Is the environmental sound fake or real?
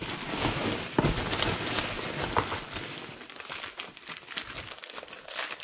real